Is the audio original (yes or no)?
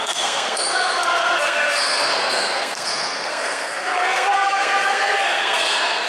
no